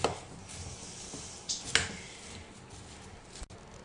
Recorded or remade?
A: recorded